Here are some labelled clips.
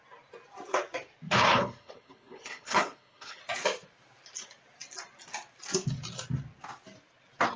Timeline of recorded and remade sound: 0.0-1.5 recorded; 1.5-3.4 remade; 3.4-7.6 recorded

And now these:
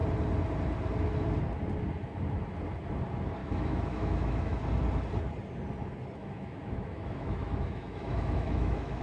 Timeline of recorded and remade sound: 0.0-3.4 recorded; 3.4-4.6 remade; 4.6-6.2 recorded; 6.2-9.0 remade

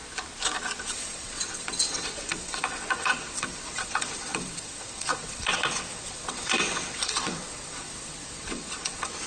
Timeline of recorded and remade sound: 0.0-0.8 recorded; 0.8-9.3 remade